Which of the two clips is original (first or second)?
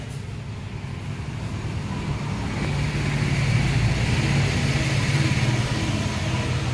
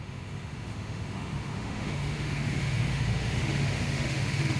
first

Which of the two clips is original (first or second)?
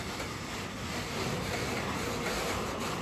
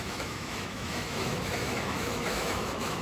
first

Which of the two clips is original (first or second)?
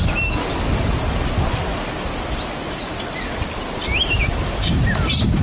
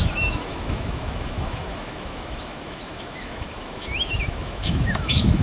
first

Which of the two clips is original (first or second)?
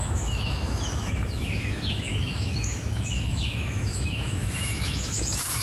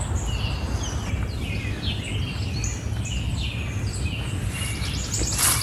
second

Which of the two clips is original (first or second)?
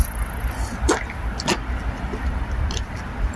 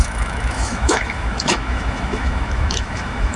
first